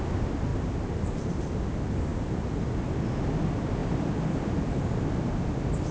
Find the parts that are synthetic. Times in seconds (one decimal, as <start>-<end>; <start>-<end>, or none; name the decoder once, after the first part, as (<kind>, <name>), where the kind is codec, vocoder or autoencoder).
0.5-1.3 (vocoder, BigVGAN v2); 2.1-2.8; 3.8-4.4